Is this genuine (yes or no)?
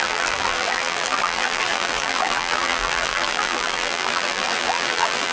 no